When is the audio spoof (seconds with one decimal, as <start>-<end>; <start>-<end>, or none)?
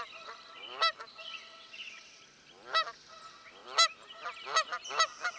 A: 1.2-2.2